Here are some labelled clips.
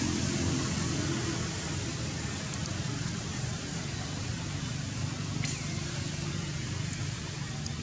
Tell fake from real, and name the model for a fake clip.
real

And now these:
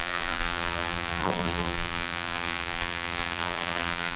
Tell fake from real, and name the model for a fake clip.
fake, vocoder, BigVGAN v2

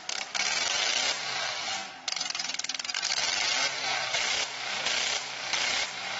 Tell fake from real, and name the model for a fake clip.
fake, vocoder, BigVGAN v2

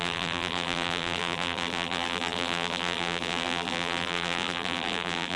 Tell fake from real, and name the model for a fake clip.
fake, vocoder, BigVGAN v2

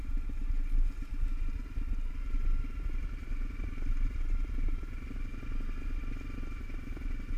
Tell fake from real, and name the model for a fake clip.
real